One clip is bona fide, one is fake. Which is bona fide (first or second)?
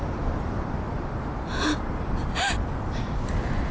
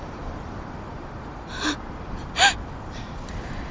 first